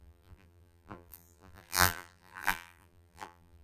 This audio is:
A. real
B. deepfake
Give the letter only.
B